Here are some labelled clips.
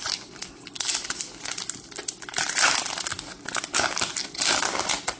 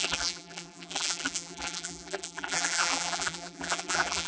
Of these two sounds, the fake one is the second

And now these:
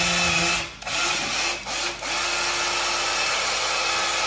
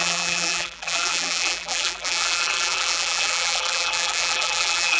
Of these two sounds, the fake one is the second